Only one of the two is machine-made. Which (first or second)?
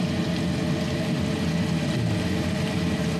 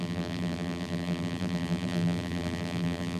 second